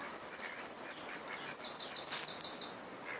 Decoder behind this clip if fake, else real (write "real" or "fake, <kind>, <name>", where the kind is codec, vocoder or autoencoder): real